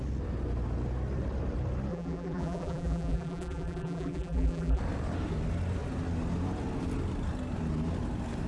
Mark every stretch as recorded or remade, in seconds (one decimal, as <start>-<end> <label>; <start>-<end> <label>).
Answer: 0.0-1.9 recorded; 1.9-4.8 remade; 4.8-8.5 recorded